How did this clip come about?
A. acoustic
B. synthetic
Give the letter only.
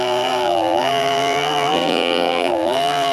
B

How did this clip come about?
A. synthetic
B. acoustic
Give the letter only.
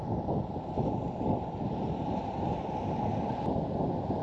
B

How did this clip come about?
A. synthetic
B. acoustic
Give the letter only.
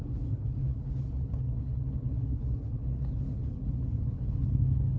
A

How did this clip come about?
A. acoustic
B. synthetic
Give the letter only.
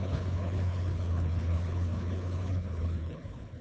B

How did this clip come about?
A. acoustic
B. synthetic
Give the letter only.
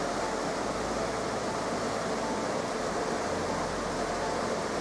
A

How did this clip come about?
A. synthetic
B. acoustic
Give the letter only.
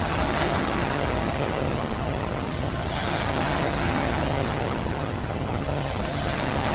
A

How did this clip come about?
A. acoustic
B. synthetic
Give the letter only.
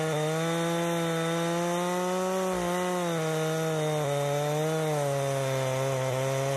A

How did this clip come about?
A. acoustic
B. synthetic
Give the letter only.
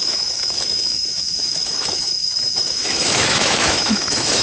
B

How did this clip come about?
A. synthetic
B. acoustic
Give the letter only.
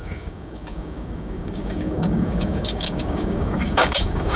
A